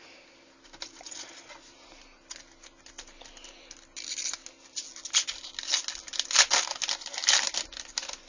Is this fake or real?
real